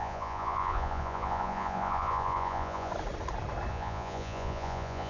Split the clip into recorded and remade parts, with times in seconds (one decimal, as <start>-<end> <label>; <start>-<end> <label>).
0.0-2.9 remade; 2.9-3.7 recorded; 3.7-5.1 remade